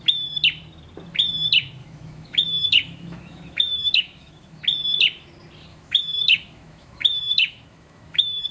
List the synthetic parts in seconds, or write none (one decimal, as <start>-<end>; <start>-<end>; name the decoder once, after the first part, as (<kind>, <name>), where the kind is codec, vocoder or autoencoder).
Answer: 1.8-4.6 (autoencoder, DAC-VAE); 5.7-8.5